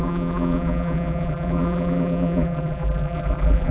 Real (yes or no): no